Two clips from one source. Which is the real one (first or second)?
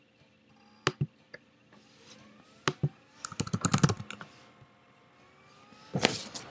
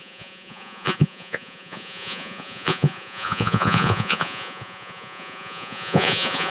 first